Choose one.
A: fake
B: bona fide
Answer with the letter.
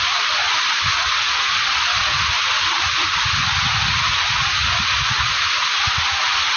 B